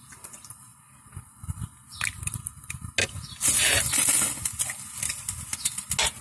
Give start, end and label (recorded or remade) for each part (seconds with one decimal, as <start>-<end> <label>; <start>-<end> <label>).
0.0-6.2 recorded